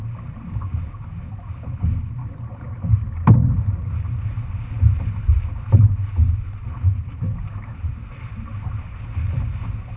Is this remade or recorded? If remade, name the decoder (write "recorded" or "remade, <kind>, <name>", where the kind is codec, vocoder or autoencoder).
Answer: recorded